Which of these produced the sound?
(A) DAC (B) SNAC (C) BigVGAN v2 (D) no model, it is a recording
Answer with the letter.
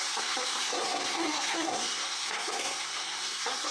B